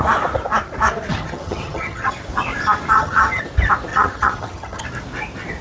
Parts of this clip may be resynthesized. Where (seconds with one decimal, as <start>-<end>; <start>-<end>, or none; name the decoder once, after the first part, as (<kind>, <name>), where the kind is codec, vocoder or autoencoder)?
1.1-2.1 (vocoder, HiFi-GAN); 2.9-3.4; 3.9-4.8